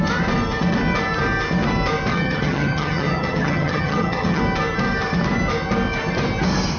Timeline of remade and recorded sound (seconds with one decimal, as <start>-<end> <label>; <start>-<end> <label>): 0.0-2.1 recorded; 2.1-4.4 remade; 4.4-6.8 recorded

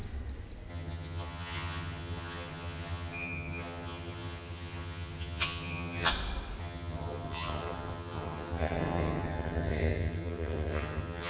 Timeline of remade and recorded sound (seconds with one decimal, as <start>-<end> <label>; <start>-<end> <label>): 0.0-0.7 recorded; 0.7-6.1 remade; 6.1-6.6 recorded; 6.6-11.3 remade